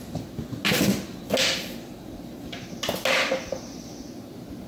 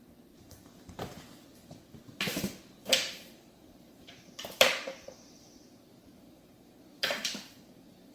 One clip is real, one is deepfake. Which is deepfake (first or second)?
second